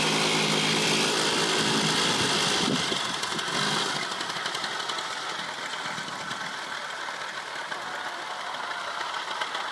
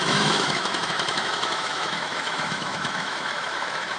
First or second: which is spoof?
second